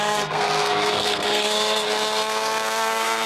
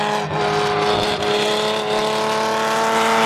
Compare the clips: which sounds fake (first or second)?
first